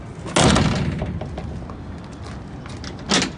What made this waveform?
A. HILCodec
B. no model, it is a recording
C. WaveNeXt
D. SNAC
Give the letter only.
B